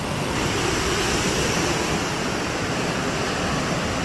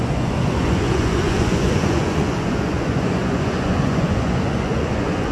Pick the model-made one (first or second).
second